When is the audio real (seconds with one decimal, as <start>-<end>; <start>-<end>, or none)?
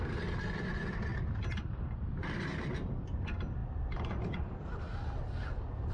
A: 0.0-5.9